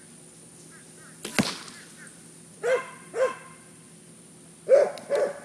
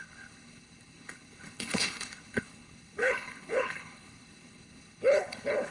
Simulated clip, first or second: second